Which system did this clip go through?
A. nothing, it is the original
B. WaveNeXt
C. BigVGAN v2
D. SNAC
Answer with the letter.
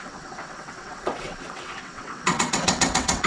B